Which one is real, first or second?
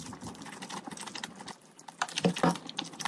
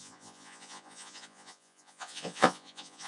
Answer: first